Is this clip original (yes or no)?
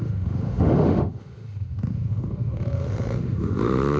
no